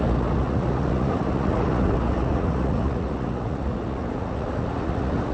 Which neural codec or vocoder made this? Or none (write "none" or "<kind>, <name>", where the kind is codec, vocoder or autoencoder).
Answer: vocoder, Vocos